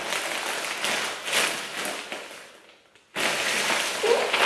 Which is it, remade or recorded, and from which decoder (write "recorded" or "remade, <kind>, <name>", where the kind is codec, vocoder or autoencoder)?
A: recorded